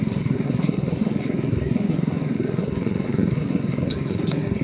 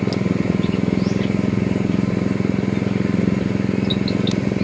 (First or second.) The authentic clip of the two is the second